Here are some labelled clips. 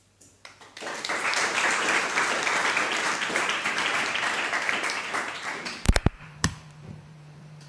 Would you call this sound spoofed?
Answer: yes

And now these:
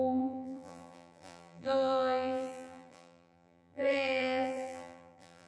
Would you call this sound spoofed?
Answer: yes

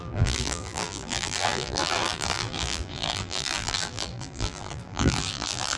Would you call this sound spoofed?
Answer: yes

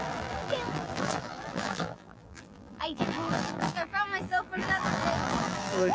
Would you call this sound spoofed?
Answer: yes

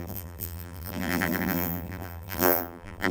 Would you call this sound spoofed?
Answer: yes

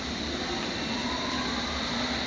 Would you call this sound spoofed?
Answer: no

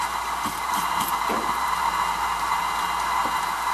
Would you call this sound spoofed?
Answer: yes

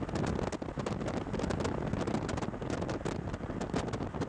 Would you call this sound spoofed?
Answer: no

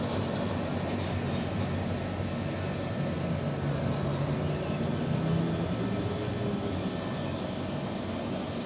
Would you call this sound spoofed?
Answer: no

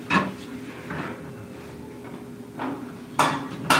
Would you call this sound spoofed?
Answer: no